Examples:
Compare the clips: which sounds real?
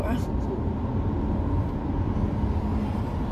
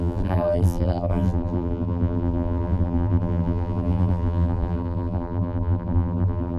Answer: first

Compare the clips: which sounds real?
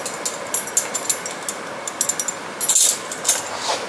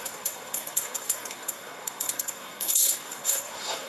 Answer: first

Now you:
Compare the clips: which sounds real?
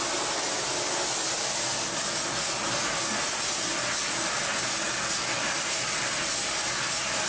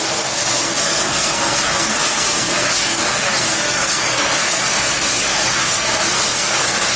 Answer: first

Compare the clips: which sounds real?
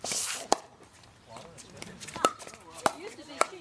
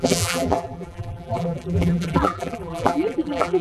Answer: first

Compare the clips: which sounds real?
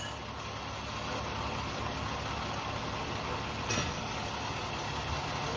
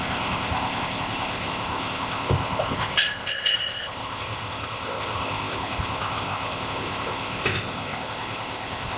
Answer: first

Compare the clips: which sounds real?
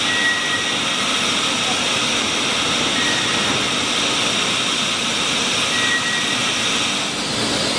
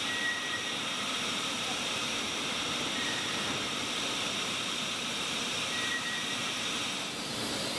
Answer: first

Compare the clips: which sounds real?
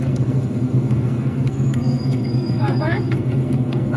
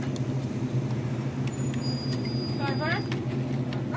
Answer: second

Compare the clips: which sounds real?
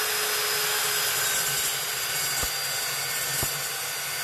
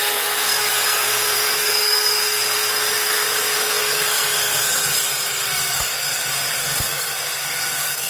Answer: first